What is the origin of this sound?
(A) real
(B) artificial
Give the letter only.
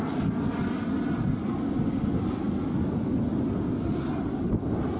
A